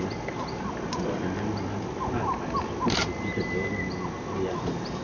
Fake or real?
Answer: real